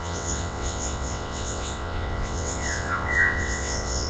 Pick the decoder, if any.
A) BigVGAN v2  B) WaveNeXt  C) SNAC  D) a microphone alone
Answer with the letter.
B